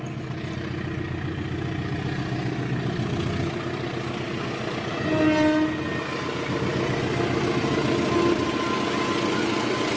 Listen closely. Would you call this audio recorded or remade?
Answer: recorded